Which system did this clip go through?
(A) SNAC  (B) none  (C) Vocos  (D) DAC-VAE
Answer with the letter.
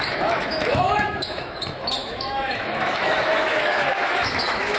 D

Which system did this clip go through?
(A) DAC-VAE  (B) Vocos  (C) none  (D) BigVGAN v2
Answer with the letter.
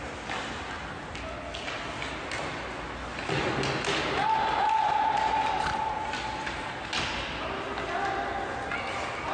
C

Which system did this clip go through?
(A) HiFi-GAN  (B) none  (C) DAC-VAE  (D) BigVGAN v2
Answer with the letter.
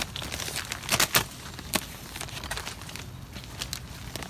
B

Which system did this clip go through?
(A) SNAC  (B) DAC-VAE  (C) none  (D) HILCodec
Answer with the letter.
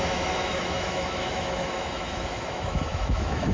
B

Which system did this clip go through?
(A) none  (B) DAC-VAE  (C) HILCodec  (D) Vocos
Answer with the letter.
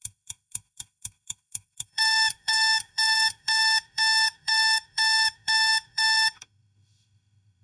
B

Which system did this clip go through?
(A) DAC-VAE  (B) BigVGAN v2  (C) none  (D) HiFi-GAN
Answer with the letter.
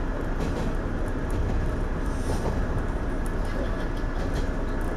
C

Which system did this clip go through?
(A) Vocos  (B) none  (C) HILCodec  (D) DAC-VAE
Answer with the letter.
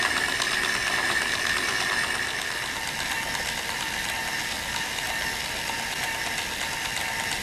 B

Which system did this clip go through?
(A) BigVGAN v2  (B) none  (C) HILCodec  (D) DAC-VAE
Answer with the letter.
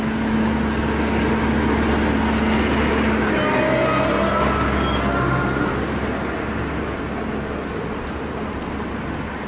B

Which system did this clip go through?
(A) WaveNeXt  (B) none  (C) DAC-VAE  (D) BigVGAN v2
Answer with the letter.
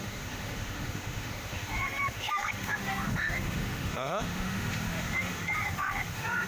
C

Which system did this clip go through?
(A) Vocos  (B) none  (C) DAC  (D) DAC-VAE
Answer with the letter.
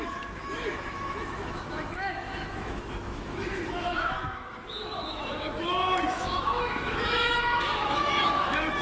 D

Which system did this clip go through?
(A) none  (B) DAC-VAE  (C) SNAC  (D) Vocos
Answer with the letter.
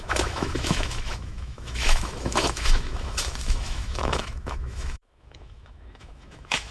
B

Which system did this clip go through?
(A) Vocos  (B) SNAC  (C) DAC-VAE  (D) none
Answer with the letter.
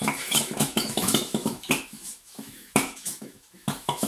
C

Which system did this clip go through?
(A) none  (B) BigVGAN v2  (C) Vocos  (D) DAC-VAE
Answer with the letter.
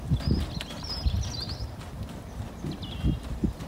A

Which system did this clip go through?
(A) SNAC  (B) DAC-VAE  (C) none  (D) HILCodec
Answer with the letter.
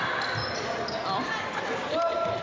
C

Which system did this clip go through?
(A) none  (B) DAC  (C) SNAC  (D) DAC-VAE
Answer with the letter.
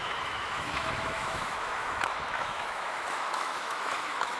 D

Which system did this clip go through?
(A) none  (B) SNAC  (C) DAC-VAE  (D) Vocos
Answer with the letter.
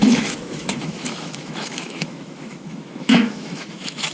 C